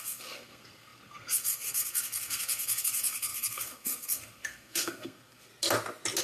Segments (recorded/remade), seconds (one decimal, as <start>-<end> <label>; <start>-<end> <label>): 0.0-5.5 remade; 5.5-6.2 recorded